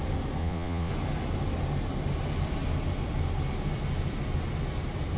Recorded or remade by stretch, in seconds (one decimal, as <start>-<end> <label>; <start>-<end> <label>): 0.0-0.4 recorded; 0.4-0.9 remade; 0.9-5.2 recorded